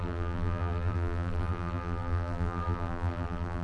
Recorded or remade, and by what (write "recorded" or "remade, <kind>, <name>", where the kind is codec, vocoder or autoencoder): remade, vocoder, BigVGAN v2